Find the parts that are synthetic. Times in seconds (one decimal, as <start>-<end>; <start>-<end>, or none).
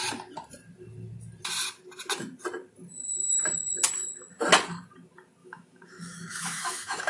5.4-7.1